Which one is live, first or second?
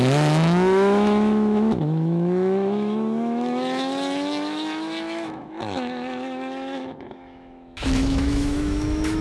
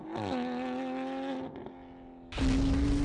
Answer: second